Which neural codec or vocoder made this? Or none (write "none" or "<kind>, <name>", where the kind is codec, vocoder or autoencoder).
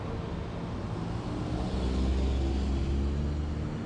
none